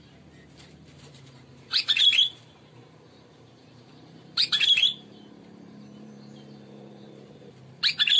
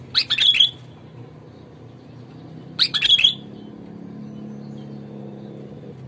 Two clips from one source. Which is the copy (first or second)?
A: first